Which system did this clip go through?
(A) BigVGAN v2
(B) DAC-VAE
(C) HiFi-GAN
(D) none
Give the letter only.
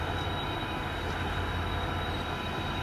D